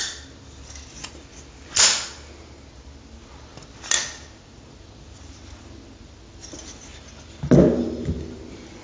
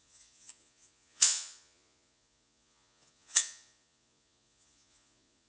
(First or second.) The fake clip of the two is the second